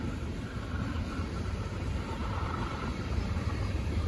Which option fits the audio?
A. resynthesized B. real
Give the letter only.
A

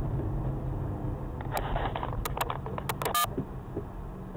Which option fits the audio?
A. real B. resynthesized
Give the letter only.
A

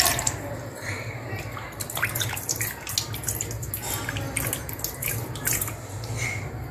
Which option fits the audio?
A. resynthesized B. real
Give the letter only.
B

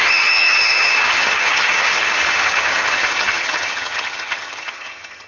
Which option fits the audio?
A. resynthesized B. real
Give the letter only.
A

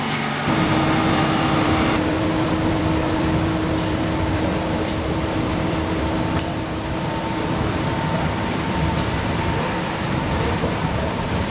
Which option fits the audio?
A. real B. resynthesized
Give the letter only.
B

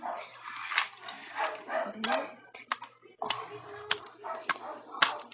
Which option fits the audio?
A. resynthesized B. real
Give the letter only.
B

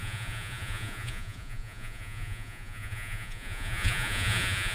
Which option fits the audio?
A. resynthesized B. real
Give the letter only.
A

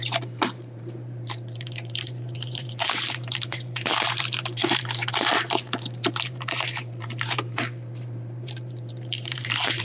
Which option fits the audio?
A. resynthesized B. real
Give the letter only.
A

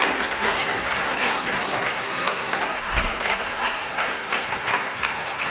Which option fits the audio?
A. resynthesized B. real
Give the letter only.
A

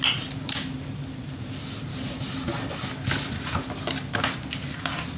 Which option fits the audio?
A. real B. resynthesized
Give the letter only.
A